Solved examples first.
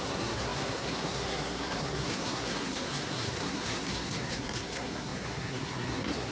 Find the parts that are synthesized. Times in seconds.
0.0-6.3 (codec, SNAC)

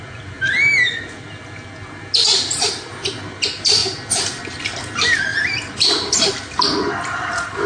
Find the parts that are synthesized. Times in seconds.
2.3-2.9 (vocoder, BigVGAN v2); 3.8-4.4; 5.3-7.7

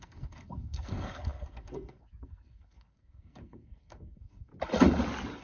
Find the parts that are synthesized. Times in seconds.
0.0-4.5 (codec, SNAC)

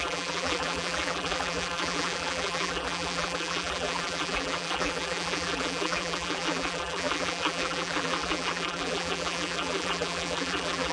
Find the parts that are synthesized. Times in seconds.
0.0-10.9 (vocoder, BigVGAN v2)